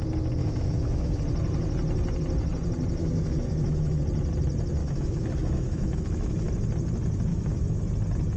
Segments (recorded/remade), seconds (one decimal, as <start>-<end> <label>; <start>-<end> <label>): 0.0-0.4 recorded; 0.4-1.2 remade; 1.2-3.0 recorded; 3.0-4.0 remade; 4.0-4.8 recorded; 4.8-6.5 remade; 6.5-7.3 recorded; 7.3-7.8 remade; 7.8-8.4 recorded